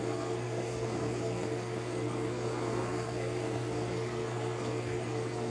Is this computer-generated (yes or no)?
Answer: yes